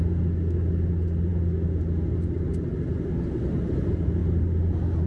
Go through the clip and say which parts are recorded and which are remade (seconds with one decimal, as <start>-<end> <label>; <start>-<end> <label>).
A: 0.0-5.1 recorded